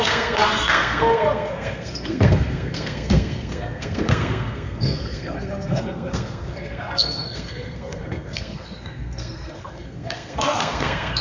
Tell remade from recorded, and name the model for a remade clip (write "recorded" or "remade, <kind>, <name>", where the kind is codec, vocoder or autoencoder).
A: remade, codec, SNAC